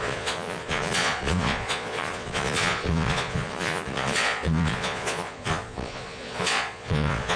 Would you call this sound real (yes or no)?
no